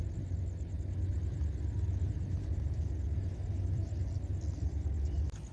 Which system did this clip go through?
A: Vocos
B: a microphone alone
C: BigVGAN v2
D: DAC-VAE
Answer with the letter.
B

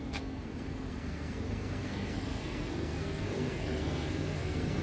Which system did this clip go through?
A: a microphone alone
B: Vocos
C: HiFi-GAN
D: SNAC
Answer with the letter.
D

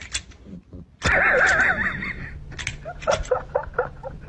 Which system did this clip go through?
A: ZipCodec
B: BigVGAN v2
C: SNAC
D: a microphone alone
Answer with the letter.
D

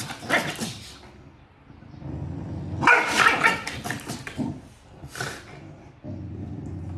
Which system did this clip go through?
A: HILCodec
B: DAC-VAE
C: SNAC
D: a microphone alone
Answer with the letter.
D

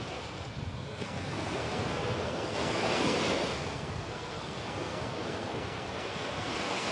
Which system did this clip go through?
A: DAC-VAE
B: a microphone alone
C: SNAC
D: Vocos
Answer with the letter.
C